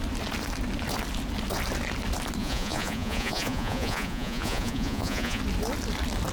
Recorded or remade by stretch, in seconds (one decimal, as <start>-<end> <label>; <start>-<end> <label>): 0.0-2.4 recorded; 2.4-5.4 remade; 5.4-6.3 recorded